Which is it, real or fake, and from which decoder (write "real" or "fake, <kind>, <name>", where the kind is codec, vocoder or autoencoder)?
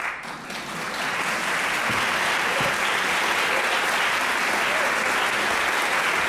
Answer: real